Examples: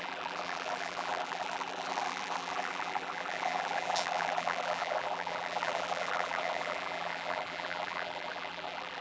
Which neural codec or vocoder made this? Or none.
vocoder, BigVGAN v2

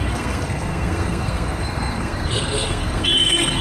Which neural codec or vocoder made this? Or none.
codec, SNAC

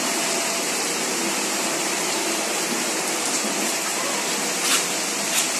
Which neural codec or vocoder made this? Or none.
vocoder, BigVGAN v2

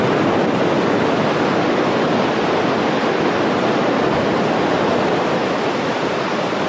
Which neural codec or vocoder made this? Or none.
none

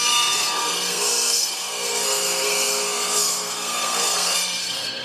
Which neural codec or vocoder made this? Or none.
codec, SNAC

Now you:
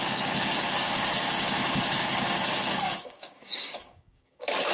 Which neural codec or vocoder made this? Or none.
codec, DAC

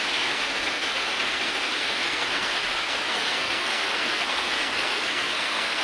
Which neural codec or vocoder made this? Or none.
codec, SNAC